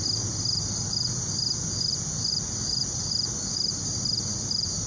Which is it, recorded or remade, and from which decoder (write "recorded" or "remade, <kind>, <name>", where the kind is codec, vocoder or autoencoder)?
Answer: recorded